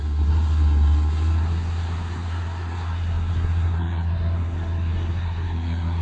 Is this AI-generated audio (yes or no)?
yes